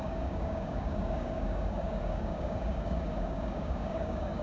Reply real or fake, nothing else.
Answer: fake